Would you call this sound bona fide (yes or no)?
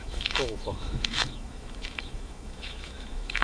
no